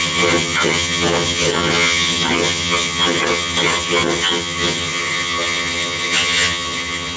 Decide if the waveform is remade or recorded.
remade